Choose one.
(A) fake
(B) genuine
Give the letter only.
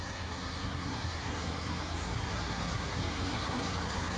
A